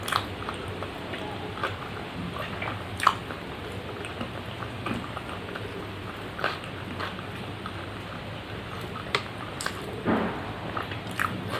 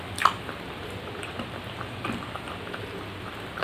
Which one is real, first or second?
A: first